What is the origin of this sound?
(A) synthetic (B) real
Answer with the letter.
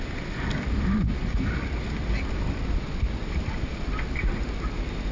B